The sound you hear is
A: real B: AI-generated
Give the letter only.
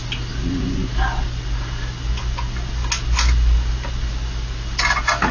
A